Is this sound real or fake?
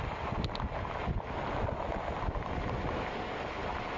real